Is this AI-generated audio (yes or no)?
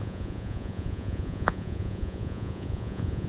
yes